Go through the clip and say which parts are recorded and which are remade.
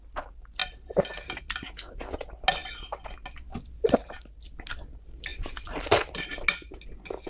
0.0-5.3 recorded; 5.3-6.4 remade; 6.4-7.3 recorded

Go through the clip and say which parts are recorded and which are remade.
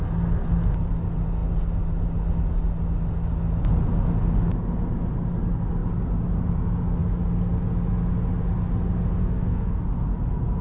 0.0-9.2 recorded; 9.2-9.8 remade; 9.8-10.6 recorded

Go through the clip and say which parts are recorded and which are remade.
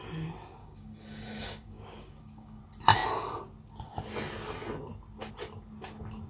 0.0-0.6 recorded; 0.6-2.6 remade; 2.6-6.3 recorded